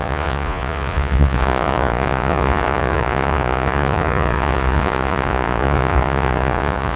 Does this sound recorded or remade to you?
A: remade